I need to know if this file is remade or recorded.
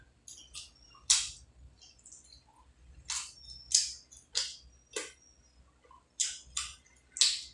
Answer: recorded